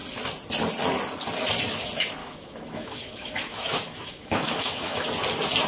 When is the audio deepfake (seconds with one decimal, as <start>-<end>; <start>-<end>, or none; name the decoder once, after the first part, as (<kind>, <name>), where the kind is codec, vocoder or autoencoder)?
2.2-5.1 (autoencoder, DAC-VAE)